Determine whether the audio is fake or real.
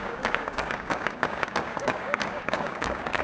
fake